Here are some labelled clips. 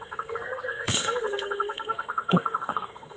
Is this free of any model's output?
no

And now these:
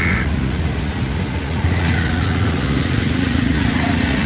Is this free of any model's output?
no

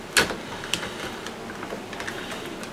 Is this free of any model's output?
yes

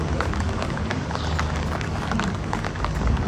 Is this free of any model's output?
no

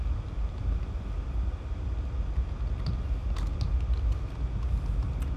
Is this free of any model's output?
yes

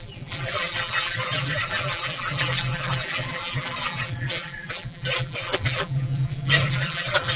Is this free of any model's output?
no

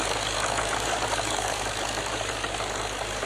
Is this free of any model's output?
no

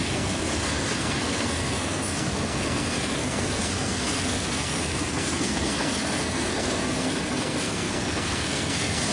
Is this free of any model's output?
no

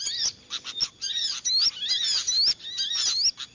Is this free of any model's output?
yes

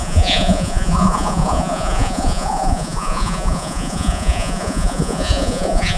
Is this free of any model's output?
no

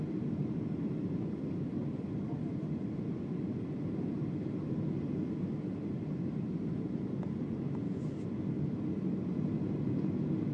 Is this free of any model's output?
yes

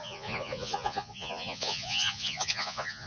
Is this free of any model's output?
no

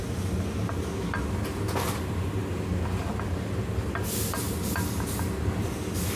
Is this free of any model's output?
yes